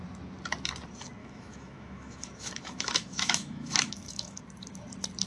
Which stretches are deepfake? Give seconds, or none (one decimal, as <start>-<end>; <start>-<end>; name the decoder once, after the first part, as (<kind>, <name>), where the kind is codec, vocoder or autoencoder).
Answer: 1.2-4.4 (autoencoder, DAC-VAE)